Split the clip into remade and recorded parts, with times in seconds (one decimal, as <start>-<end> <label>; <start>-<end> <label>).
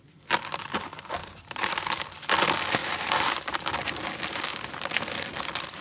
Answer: 0.0-1.2 recorded; 1.2-2.0 remade; 2.0-2.8 recorded; 2.8-3.6 remade; 3.6-5.8 recorded